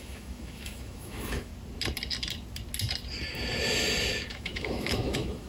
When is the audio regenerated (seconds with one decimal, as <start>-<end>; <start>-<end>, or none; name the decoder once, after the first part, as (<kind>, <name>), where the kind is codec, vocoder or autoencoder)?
0.0-1.5 (autoencoder, DAC-VAE); 4.3-5.5